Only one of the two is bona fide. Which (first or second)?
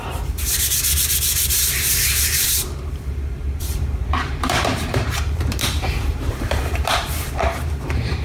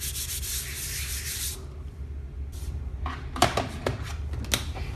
second